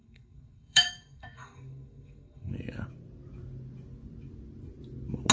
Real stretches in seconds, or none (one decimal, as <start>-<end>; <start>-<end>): 2.5-5.3